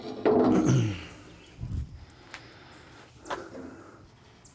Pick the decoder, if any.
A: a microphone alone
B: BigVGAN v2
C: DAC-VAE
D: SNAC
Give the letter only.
A